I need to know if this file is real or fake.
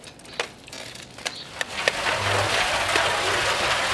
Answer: real